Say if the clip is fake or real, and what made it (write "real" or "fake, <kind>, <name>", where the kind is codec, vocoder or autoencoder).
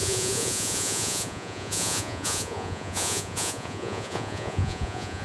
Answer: fake, vocoder, Vocos